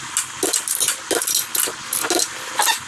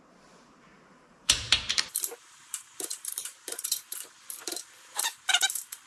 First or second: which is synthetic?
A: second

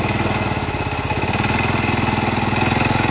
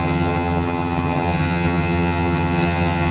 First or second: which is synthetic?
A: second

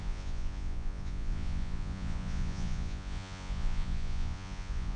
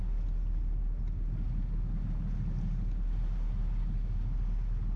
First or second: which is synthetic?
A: first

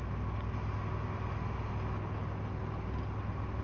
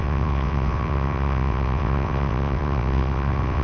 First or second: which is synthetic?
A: second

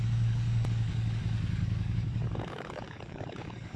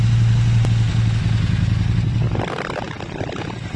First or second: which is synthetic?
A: first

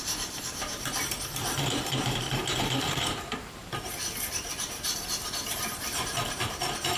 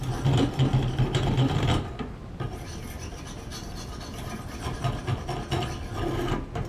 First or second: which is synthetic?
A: first